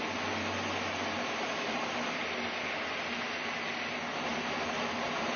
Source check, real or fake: real